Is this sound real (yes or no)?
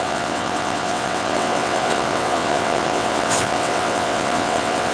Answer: no